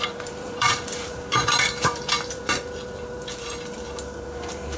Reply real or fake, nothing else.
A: fake